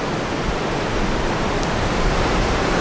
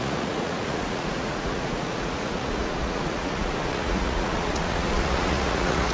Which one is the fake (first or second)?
second